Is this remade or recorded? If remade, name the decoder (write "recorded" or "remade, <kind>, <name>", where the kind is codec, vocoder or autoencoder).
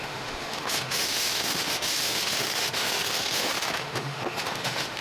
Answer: remade, autoencoder, DAC-VAE